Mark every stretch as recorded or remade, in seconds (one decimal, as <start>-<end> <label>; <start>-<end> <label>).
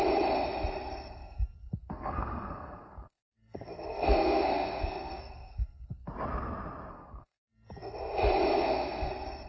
0.0-1.6 recorded; 1.6-6.1 remade; 6.1-6.9 recorded; 6.9-7.4 remade; 7.4-8.5 recorded; 8.5-9.1 remade; 9.1-9.5 recorded